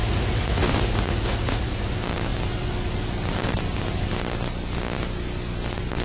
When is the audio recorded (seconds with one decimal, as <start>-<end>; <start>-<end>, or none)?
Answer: 1.7-6.0